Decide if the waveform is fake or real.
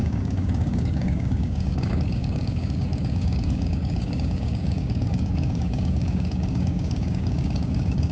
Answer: fake